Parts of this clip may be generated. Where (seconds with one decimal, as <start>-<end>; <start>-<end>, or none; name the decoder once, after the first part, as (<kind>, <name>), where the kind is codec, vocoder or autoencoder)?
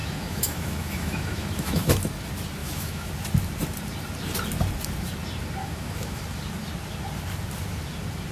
0.0-1.9 (autoencoder, DAC-VAE); 2.6-3.1; 5.6-6.2